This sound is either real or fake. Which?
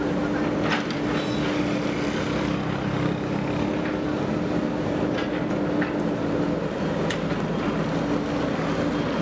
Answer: real